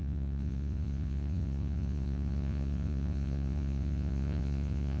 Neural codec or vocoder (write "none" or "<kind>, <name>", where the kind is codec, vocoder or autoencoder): vocoder, Vocos